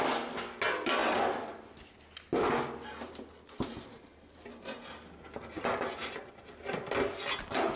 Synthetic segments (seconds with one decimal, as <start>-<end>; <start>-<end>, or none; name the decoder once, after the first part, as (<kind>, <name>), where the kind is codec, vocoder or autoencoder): none